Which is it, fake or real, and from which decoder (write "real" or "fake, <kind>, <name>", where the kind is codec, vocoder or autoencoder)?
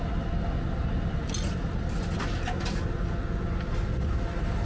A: real